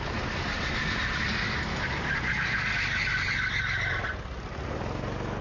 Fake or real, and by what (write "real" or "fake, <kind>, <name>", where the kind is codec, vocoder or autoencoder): real